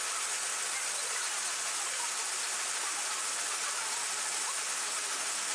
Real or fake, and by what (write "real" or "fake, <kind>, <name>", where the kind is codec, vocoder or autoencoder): real